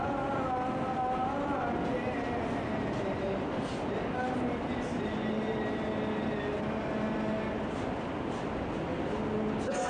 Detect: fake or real real